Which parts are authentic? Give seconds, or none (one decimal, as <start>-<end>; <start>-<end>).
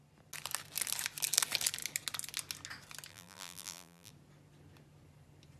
0.0-3.1; 4.1-5.6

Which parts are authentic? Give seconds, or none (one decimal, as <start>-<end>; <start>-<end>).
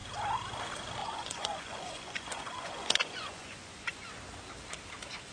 0.0-1.0; 4.2-5.3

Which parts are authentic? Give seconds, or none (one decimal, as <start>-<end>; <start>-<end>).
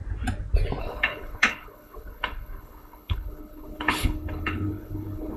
0.0-0.8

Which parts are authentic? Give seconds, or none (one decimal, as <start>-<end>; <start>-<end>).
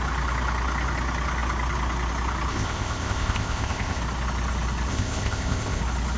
0.0-2.5; 4.0-4.9; 5.8-6.2